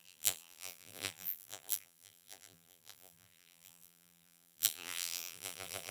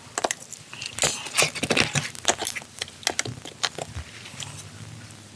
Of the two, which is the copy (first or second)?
first